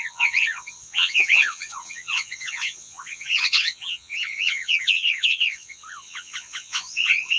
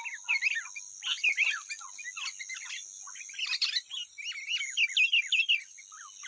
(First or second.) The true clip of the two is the second